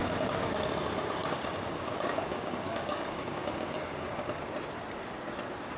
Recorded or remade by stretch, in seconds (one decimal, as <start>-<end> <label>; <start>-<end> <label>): 0.0-0.7 remade; 0.7-1.2 recorded; 1.2-4.4 remade; 4.4-5.8 recorded